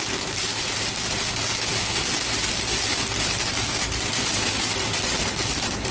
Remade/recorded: recorded